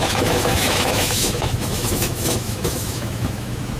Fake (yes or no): yes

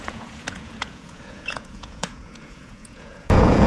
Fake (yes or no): yes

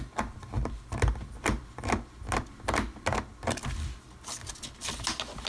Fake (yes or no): no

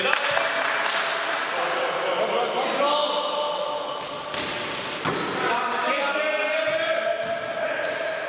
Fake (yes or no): no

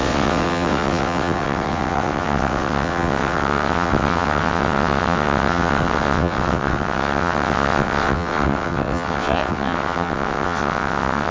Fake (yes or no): yes